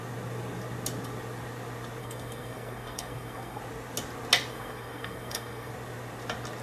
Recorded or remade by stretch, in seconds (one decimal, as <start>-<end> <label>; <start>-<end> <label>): 0.0-2.0 recorded; 2.0-3.6 remade; 3.6-4.5 recorded; 4.5-5.7 remade; 5.7-6.6 recorded